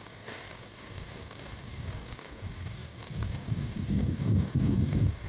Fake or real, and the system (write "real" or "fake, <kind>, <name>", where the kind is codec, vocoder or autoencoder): fake, codec, DAC